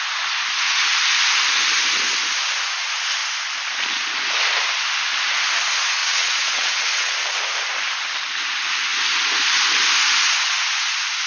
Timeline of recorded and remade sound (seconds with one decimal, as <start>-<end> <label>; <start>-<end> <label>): 0.0-6.0 recorded; 6.0-7.1 remade; 7.1-11.3 recorded